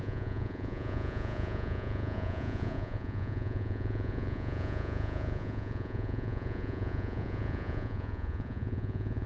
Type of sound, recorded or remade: remade